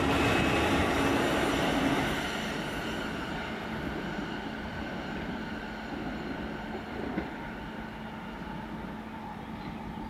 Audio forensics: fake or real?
real